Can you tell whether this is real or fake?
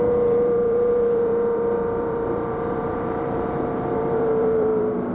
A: fake